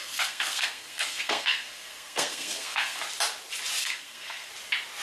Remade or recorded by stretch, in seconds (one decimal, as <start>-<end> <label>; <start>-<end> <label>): 0.0-3.0 remade; 3.0-3.8 recorded; 3.8-4.5 remade; 4.5-5.0 recorded